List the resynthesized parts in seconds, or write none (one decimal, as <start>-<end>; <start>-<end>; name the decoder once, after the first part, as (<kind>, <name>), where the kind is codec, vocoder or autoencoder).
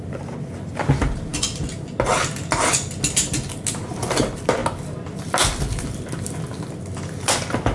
none